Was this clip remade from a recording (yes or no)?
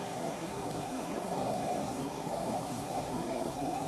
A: yes